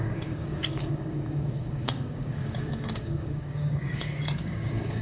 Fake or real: fake